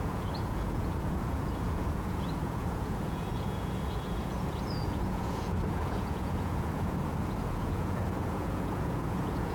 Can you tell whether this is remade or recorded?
remade